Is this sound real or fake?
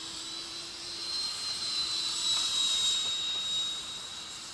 fake